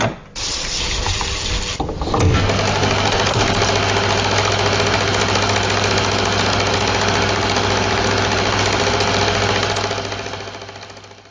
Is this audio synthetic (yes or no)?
no